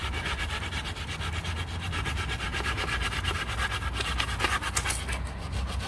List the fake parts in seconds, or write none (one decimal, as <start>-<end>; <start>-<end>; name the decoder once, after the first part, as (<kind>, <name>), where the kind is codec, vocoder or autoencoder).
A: none